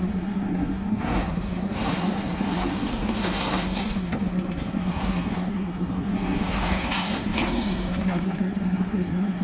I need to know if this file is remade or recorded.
remade